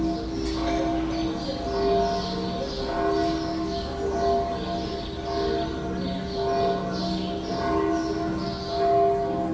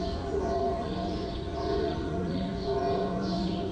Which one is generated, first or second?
second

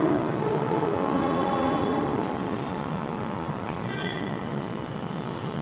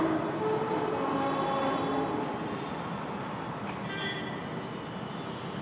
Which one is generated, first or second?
first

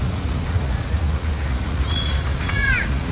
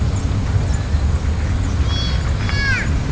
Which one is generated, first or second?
first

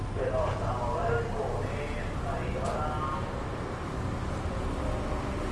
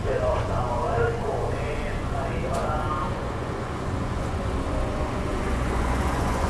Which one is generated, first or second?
second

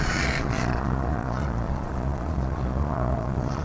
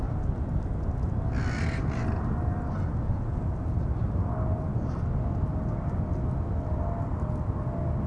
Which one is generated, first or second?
first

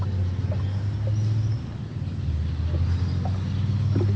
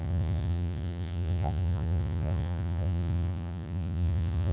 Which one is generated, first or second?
second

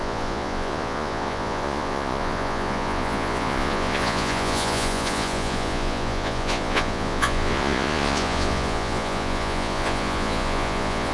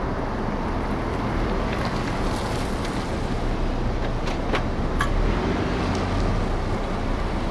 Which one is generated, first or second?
first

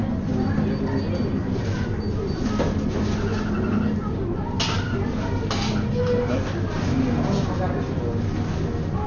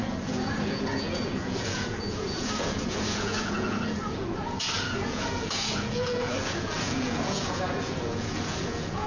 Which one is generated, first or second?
second